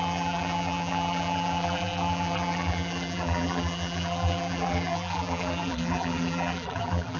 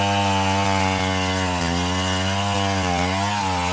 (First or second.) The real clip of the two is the second